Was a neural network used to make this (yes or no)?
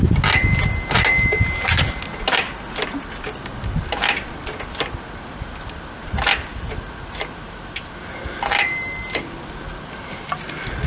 no